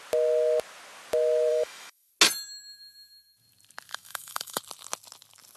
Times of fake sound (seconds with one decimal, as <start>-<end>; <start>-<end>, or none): 1.5-2.1; 3.9-4.6